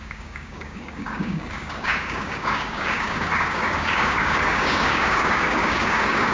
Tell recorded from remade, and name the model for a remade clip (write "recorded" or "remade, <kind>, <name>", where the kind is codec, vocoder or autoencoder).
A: remade, codec, DAC